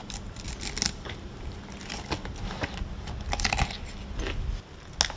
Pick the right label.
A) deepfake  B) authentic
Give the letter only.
B